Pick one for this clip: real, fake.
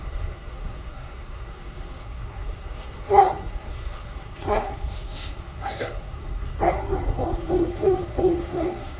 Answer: fake